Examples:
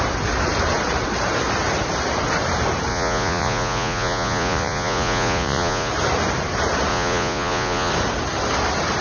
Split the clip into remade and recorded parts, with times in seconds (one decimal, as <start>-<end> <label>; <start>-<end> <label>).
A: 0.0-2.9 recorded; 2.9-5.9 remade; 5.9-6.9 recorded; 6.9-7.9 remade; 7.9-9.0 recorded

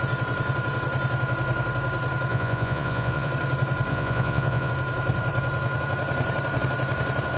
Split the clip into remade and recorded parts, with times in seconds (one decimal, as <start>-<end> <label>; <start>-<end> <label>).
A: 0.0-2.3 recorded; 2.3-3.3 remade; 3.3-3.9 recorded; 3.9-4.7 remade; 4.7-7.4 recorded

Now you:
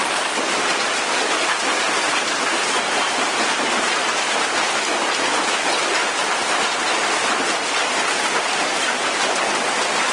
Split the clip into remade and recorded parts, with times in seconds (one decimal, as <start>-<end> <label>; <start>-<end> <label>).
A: 0.0-10.1 recorded

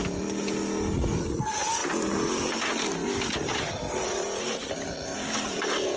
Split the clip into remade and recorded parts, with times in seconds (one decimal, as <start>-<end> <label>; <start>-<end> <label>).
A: 0.0-6.0 recorded